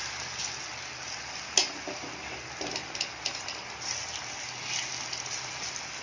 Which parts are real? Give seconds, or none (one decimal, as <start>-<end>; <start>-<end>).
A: 0.0-6.0

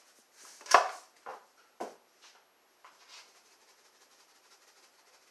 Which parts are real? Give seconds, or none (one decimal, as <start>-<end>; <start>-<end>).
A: 0.0-5.3

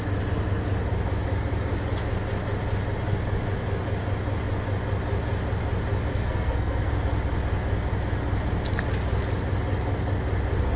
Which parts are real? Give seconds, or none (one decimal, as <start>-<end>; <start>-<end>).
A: 0.0-6.1; 6.9-10.8